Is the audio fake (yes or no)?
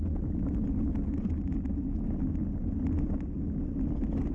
no